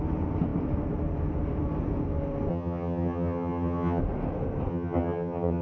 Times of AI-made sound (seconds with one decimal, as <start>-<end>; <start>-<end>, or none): 2.5-4.0; 4.7-5.6